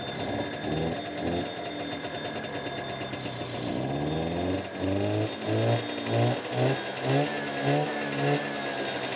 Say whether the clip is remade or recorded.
recorded